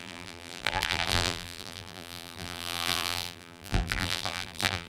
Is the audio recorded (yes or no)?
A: no